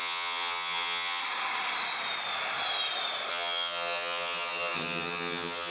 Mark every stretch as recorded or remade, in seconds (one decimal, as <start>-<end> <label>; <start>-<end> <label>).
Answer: 0.0-1.2 remade; 1.2-3.3 recorded; 3.3-5.7 remade